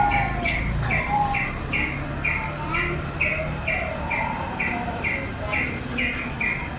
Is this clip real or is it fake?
real